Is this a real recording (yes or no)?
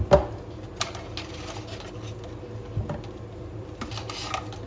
yes